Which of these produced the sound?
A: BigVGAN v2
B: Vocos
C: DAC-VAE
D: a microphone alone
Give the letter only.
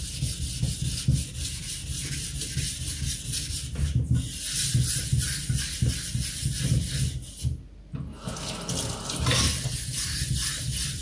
D